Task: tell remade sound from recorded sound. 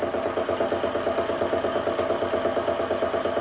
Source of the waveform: recorded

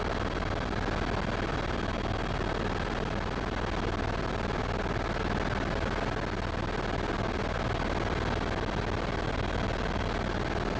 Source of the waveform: recorded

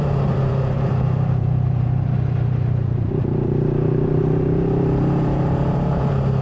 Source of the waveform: remade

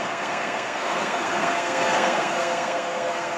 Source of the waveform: remade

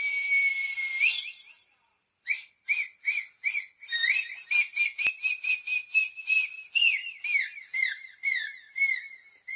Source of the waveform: remade